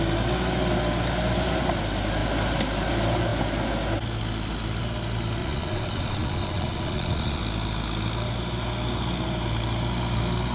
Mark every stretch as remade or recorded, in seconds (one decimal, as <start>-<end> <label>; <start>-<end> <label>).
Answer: 0.0-5.4 recorded; 5.4-7.4 remade; 7.4-10.5 recorded